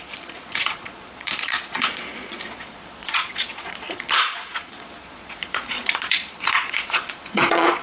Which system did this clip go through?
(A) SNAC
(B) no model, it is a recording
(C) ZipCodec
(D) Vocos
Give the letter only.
D